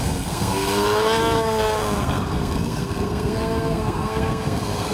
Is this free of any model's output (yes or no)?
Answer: no